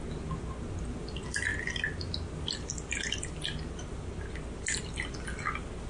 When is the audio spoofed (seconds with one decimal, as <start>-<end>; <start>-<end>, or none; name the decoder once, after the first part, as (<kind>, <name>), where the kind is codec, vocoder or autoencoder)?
none